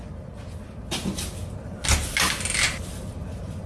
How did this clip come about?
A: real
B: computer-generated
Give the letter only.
A